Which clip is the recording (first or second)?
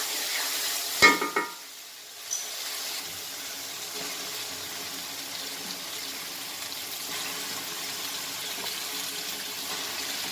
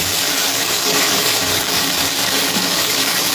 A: first